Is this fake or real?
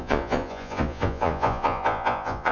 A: fake